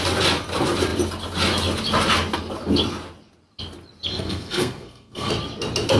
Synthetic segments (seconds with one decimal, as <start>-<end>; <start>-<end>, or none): 4.1-5.3